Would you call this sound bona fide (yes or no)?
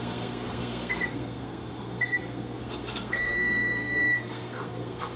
no